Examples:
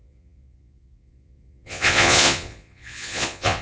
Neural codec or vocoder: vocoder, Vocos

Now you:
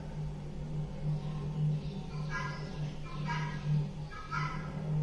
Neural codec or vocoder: none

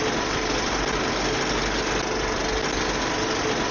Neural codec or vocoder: none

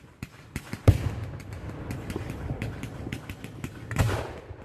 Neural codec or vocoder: none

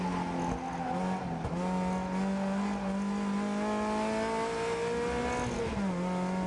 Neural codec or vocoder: none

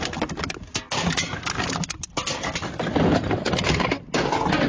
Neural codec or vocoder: none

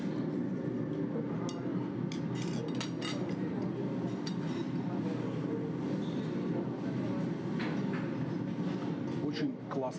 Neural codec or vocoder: none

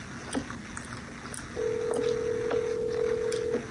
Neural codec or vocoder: none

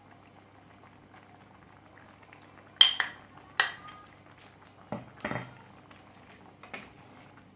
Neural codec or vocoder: none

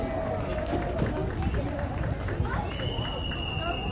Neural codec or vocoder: none